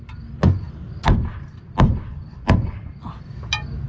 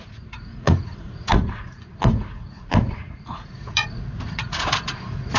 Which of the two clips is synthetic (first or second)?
second